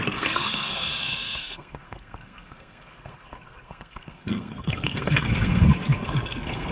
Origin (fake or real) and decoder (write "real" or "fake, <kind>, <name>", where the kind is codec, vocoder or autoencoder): fake, codec, SNAC